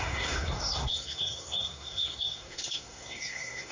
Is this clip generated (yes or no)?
yes